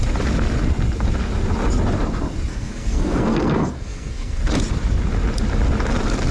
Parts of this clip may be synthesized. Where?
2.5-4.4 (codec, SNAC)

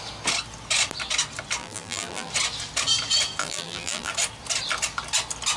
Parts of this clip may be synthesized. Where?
1.6-2.3 (vocoder, BigVGAN v2); 3.4-4.1

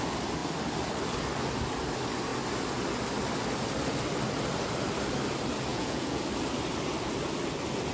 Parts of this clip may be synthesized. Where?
5.7-6.2 (vocoder, Vocos)